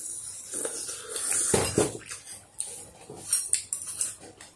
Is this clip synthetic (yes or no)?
no